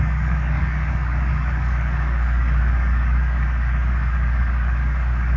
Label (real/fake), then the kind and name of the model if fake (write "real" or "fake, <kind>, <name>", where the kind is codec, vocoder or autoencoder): fake, codec, DAC